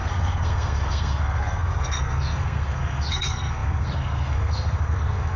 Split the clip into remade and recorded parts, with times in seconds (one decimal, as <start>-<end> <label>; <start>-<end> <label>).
0.0-5.4 remade